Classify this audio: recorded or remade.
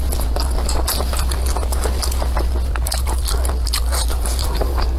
recorded